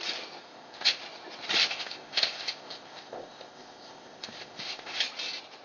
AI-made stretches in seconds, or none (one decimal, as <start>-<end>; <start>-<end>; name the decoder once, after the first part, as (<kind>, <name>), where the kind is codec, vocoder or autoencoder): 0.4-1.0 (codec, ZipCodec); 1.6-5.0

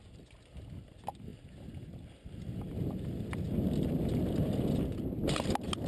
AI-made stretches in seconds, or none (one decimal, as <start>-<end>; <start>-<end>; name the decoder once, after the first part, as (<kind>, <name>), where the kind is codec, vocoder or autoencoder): none

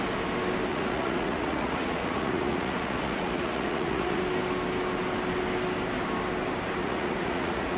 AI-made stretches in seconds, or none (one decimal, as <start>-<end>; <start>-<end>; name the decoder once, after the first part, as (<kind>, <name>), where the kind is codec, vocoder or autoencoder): 0.7-4.2 (vocoder, Vocos); 6.8-7.8

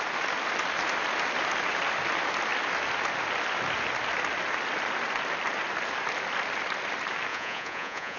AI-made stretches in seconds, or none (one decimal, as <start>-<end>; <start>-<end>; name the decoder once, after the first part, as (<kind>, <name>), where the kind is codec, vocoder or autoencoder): 7.3-8.2 (vocoder, Vocos)

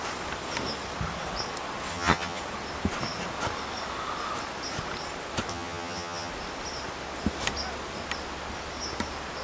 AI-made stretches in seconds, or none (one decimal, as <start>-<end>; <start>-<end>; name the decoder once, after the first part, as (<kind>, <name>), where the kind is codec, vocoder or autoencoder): 1.9-2.4 (vocoder, HiFi-GAN); 5.5-6.3

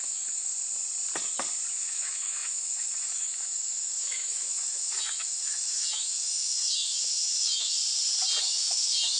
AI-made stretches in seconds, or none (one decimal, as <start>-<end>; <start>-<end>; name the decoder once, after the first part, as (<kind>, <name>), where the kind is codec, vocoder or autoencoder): 0.0-0.5 (autoencoder, DAC-VAE); 1.7-7.8; 8.4-9.2

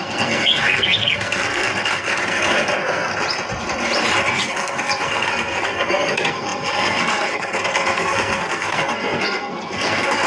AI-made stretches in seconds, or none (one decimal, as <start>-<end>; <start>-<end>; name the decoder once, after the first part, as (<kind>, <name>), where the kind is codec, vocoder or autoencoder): 0.0-3.1 (codec, SNAC); 4.3-10.3